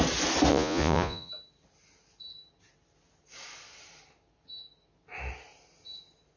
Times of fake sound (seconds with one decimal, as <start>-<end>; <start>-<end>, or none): 0.5-1.3